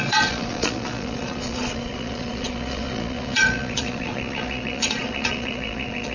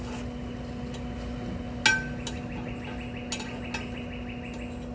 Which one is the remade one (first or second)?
first